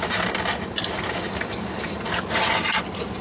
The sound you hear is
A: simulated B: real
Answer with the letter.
B